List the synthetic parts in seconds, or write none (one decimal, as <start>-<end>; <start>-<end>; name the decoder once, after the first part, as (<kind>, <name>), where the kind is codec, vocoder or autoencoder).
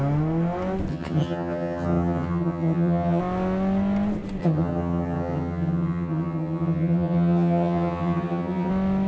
0.9-3.2 (vocoder, HiFi-GAN); 4.4-8.7